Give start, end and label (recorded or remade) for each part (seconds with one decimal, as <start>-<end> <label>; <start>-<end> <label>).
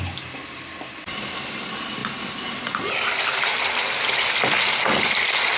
0.0-1.6 remade; 1.6-5.6 recorded